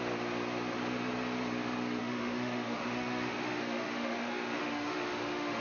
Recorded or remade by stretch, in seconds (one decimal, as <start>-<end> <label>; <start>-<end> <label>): 0.0-2.0 recorded; 2.0-5.6 remade